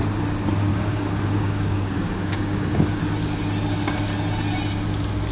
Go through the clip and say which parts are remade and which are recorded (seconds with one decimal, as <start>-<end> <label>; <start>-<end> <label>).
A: 0.0-0.7 recorded; 0.7-3.0 remade; 3.0-5.3 recorded

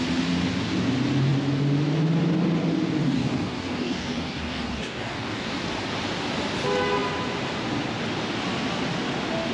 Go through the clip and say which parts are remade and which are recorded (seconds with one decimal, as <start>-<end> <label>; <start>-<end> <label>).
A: 0.0-3.0 recorded; 3.0-5.6 remade; 5.6-9.5 recorded

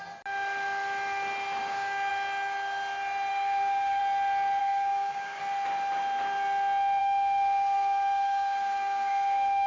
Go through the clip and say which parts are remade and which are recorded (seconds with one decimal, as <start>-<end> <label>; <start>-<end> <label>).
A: 0.0-1.6 recorded; 1.6-2.1 remade; 2.1-3.3 recorded; 3.3-4.0 remade; 4.0-4.6 recorded; 4.6-5.4 remade; 5.4-7.0 recorded; 7.0-9.7 remade

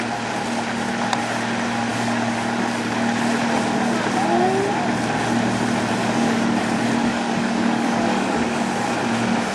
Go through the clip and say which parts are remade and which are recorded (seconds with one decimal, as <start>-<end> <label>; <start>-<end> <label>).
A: 0.0-1.9 recorded; 1.9-2.8 remade; 2.8-6.0 recorded; 6.0-6.6 remade; 6.6-7.0 recorded; 7.0-8.9 remade; 8.9-9.5 recorded

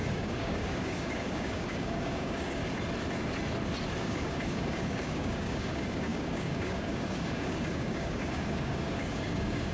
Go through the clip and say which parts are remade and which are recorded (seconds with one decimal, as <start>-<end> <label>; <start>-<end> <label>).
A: 0.0-2.6 remade; 2.6-4.0 recorded; 4.0-9.7 remade